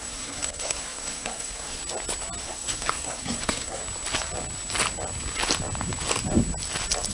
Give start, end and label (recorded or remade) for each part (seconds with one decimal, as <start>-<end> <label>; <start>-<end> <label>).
0.0-1.8 remade; 1.8-2.4 recorded; 2.4-3.8 remade; 3.8-7.1 recorded